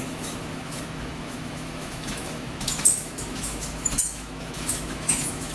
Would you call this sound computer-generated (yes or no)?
yes